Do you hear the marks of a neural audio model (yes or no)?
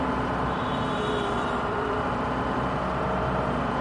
yes